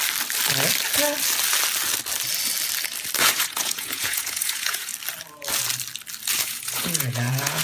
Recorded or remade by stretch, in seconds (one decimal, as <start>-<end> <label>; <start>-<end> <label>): 0.0-3.2 recorded; 3.2-4.9 remade; 4.9-6.4 recorded; 6.4-7.6 remade